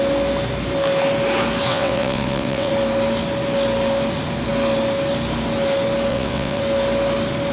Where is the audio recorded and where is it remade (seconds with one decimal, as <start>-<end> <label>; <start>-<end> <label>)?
0.0-1.7 recorded; 1.7-2.7 remade; 2.7-6.1 recorded; 6.1-6.6 remade; 6.6-7.5 recorded